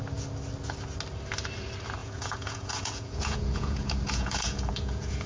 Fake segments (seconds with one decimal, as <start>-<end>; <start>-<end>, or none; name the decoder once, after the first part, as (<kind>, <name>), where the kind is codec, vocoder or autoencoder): 2.0-5.3 (vocoder, Vocos)